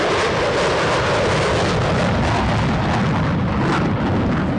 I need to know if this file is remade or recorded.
recorded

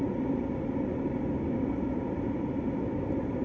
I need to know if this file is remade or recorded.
recorded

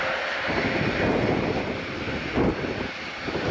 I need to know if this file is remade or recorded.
recorded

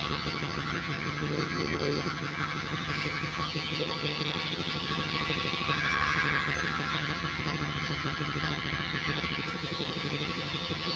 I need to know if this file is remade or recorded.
remade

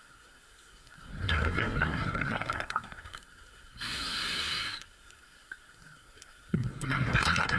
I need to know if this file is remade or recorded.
remade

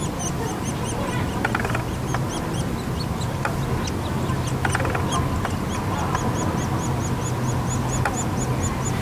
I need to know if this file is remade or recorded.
recorded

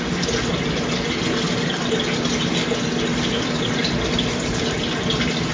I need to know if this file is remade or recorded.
recorded